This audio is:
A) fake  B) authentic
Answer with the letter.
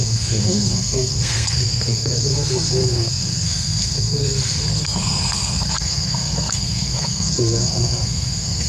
A